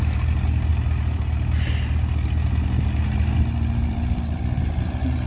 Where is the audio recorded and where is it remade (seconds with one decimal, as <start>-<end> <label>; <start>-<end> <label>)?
0.0-5.3 recorded